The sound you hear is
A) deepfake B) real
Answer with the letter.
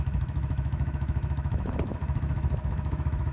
A